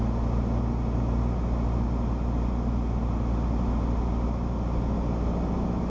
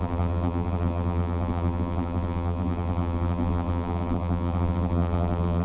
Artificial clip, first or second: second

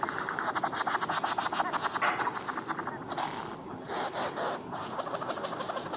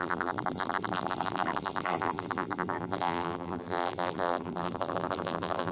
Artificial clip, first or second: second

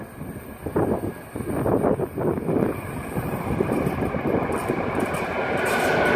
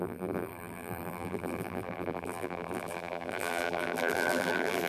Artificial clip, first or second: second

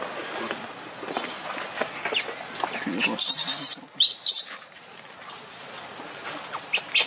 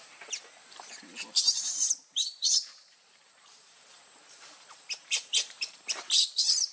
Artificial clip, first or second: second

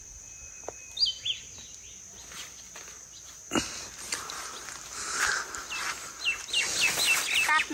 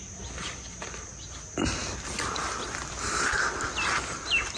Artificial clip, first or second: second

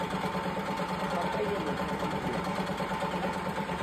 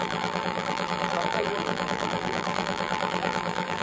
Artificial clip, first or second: second